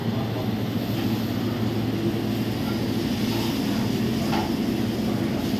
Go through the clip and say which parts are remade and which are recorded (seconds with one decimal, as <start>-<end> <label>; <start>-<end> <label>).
0.0-5.6 recorded